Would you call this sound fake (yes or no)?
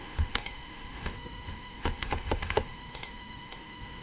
yes